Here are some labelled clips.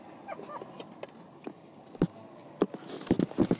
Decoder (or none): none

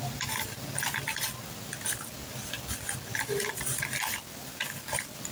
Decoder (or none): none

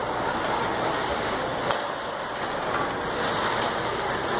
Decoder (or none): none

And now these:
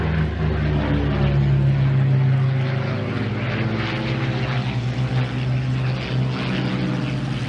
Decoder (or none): none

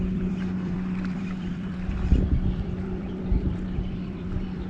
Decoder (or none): vocoder, BigVGAN v2